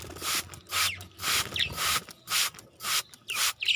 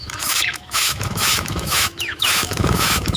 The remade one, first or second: second